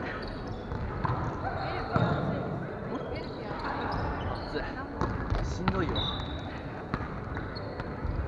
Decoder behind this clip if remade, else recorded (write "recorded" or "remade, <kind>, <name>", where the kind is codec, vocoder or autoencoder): recorded